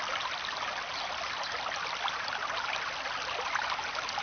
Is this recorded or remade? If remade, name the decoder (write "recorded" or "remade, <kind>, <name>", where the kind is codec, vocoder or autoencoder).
recorded